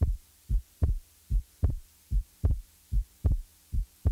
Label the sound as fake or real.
fake